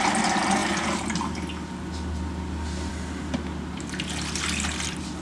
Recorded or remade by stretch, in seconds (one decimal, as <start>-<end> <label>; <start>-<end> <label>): 0.0-5.2 recorded